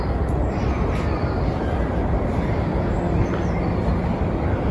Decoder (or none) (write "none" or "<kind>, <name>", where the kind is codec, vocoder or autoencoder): none